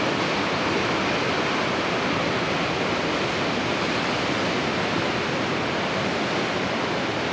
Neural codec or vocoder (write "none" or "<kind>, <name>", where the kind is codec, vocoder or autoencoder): none